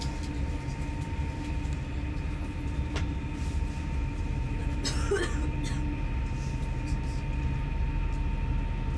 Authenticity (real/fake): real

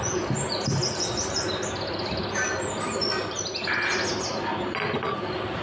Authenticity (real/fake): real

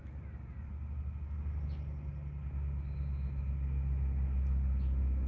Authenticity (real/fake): real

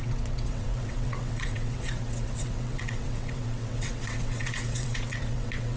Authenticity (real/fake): fake